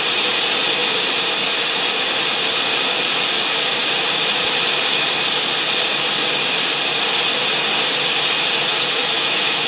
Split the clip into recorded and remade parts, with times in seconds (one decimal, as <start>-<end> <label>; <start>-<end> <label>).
0.0-8.7 recorded; 8.7-9.7 remade